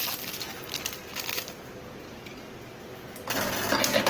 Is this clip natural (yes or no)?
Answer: yes